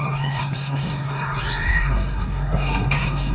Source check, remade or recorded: remade